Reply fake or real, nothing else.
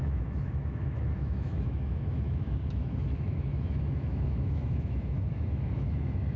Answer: fake